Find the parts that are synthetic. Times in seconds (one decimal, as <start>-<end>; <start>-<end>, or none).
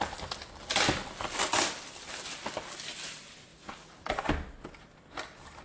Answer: 3.5-4.2